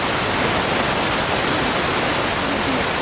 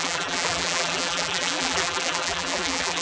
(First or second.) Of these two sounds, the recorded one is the first